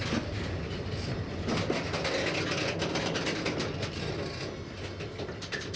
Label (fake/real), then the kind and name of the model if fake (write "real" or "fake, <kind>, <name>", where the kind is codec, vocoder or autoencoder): real